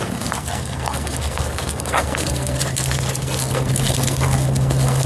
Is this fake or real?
fake